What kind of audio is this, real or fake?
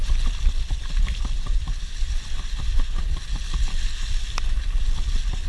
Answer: real